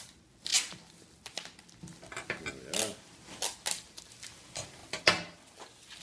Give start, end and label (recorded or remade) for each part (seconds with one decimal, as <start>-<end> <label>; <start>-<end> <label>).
0.0-6.0 recorded